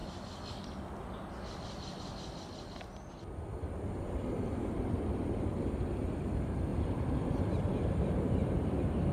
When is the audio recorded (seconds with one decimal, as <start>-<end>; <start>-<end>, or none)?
0.0-4.0